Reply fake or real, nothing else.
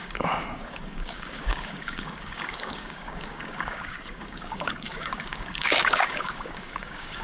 fake